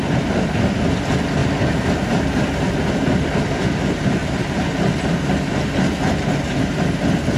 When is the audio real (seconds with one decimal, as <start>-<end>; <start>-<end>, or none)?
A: 0.0-1.4; 2.9-4.2; 5.4-7.4